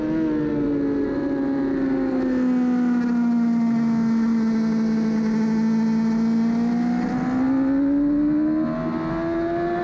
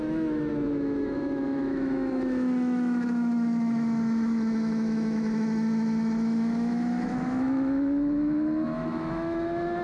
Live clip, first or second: first